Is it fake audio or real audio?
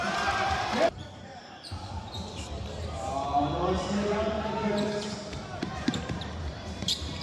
fake